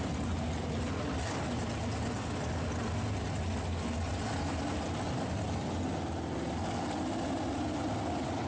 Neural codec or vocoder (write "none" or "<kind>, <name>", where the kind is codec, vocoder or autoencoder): none